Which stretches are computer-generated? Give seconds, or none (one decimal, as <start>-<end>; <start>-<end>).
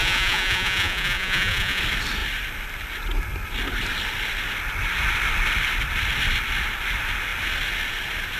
0.0-1.8